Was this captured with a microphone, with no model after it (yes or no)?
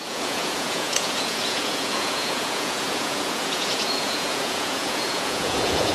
no